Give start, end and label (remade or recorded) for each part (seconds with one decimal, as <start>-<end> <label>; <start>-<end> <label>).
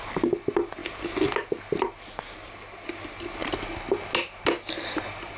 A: 0.0-5.4 recorded